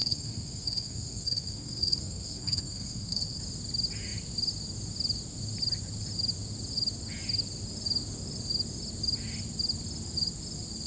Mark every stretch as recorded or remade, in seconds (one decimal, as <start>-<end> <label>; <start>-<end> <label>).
0.0-3.4 remade; 3.4-10.9 recorded